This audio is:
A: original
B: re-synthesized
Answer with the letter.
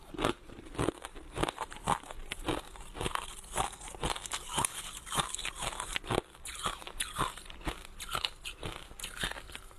A